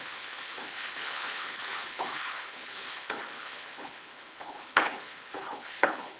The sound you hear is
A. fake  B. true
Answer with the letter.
A